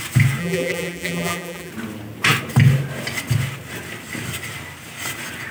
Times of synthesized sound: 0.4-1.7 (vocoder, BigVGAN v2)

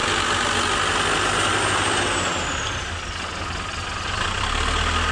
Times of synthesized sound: none